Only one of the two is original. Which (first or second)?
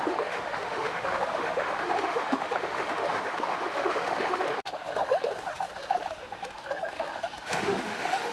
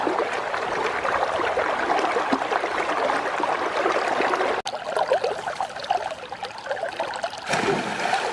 second